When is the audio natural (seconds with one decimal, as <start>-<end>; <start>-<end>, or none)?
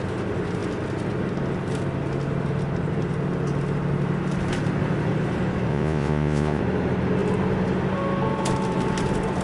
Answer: 0.0-5.7; 6.6-9.4